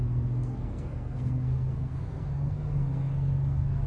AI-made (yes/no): yes